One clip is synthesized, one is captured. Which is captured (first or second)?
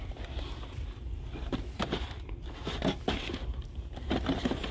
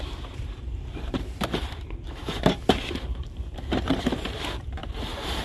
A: first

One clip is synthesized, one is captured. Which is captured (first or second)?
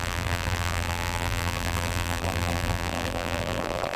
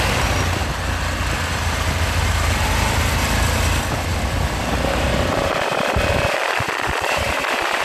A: second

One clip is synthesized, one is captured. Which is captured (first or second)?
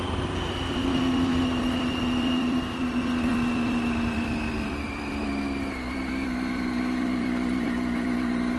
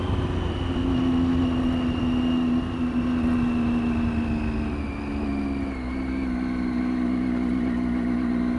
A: second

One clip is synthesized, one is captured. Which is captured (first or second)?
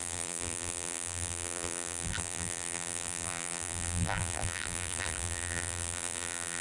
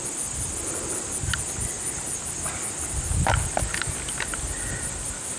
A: second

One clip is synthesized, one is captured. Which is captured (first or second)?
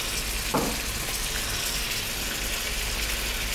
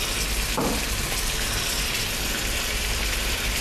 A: first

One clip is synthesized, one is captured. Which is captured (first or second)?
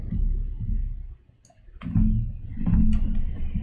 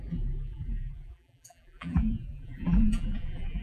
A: first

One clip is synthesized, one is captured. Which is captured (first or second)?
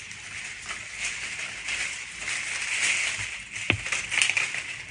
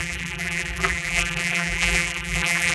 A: first